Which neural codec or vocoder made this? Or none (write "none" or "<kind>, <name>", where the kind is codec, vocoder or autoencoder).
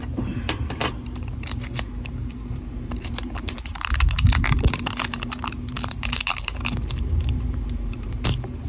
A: vocoder, BigVGAN v2